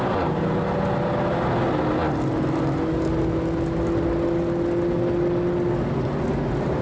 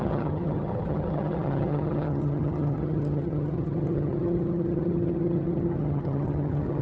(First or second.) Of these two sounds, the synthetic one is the second